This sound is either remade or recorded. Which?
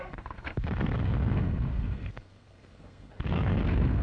remade